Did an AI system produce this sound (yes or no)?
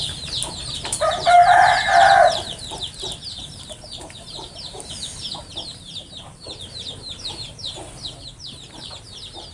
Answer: yes